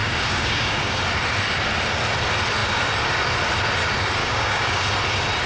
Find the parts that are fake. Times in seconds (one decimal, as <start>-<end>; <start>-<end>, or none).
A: 0.0-1.0; 4.2-4.8